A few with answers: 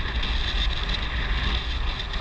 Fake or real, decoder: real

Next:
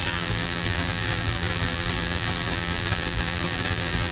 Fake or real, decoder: fake, vocoder, BigVGAN v2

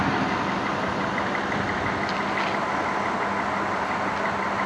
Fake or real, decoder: real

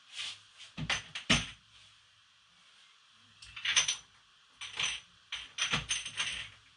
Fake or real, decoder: real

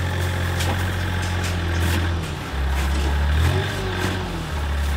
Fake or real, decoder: real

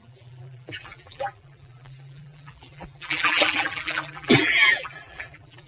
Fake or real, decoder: fake, vocoder, BigVGAN v2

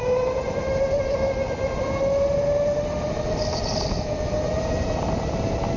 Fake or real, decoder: real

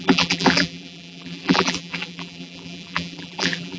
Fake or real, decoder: fake, vocoder, BigVGAN v2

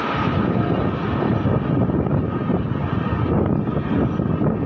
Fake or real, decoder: real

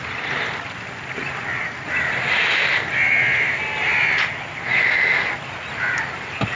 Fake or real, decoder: real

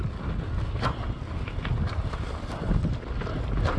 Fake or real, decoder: real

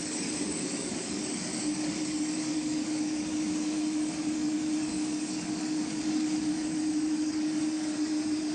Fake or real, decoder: fake, codec, DAC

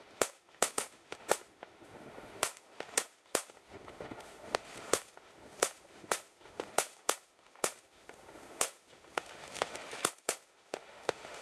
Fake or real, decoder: fake, autoencoder, DAC-VAE